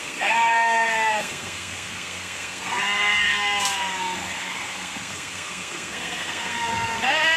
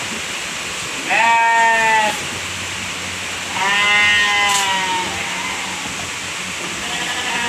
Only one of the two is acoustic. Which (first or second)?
second